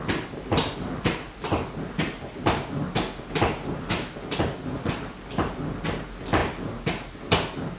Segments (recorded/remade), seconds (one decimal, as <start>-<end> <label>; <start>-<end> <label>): 0.0-7.8 recorded